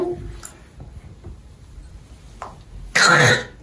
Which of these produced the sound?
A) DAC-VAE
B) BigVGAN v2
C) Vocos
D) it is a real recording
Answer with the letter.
D